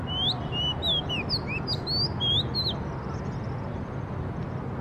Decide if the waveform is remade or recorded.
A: recorded